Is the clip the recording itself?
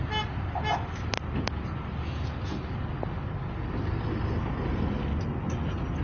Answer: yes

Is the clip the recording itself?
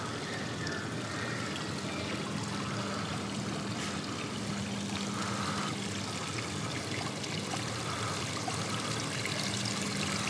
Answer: yes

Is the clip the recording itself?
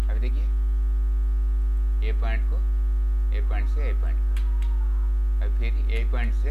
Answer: yes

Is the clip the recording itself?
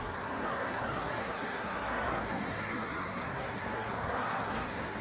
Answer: no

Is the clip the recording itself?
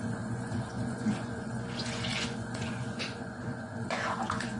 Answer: no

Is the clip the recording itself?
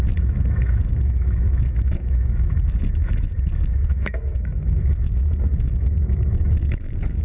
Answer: no